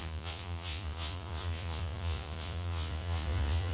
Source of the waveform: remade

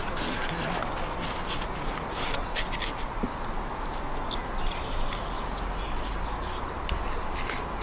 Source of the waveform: recorded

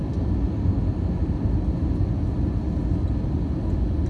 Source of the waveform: recorded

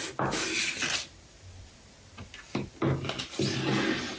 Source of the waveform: recorded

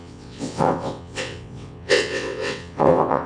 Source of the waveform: remade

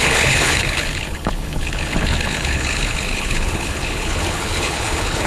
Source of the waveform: remade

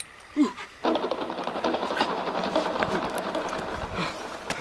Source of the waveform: recorded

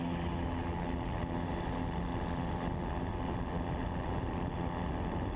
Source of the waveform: recorded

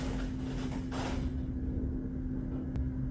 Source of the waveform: recorded